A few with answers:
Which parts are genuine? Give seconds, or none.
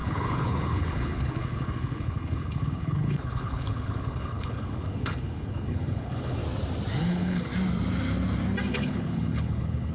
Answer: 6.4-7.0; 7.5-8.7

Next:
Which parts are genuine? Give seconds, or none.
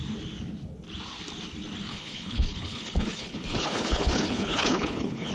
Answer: 0.0-1.9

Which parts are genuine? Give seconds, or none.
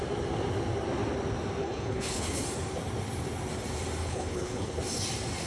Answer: 0.0-1.6; 2.4-4.0; 4.8-5.5